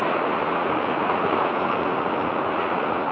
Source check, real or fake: fake